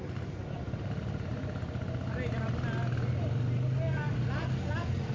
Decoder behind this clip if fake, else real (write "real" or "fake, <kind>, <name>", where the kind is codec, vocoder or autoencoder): real